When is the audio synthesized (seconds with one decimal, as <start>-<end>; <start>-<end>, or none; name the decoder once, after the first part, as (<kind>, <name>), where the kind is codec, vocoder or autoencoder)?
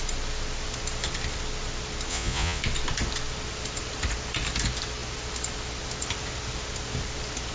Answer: 2.1-2.6 (vocoder, Vocos)